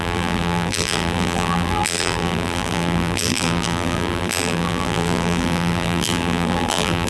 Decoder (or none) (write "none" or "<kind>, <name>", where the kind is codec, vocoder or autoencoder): vocoder, BigVGAN v2